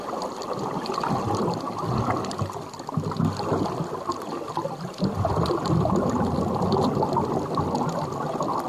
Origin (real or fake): real